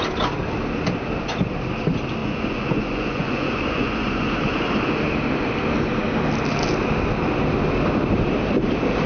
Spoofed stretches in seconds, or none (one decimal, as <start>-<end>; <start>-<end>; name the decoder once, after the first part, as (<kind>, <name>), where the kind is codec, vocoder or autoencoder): 2.2-4.7 (vocoder, Vocos)